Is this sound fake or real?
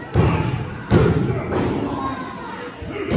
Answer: real